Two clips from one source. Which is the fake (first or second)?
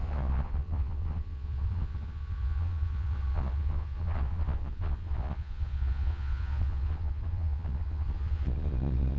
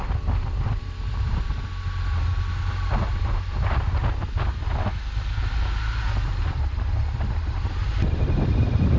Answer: first